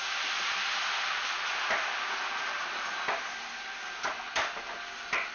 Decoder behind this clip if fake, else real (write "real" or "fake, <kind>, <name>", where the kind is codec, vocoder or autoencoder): real